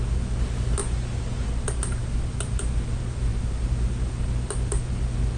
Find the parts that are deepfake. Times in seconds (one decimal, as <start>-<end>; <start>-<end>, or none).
none